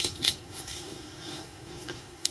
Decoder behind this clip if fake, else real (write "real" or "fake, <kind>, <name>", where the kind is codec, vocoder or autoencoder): fake, codec, SNAC